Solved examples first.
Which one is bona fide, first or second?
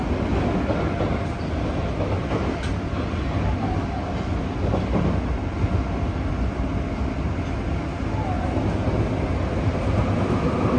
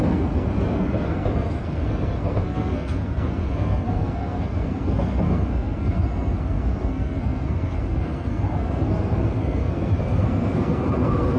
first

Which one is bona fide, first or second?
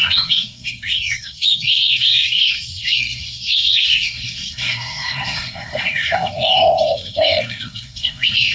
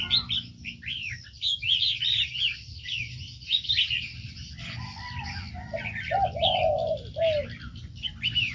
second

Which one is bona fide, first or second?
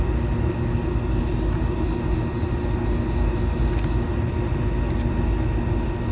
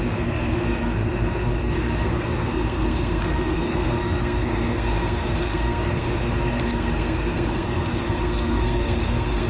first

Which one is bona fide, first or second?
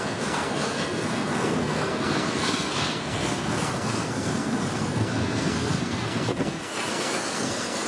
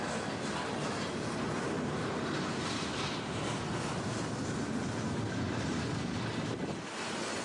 second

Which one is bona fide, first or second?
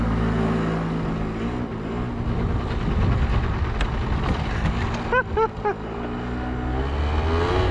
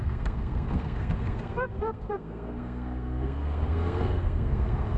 first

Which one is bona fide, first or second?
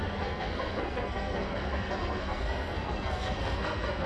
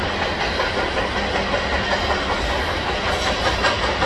second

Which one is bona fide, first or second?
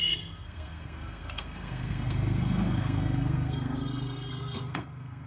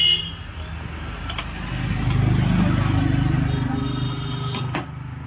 second